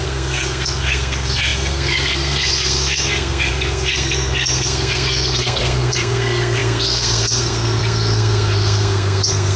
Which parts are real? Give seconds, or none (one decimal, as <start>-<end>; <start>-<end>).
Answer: none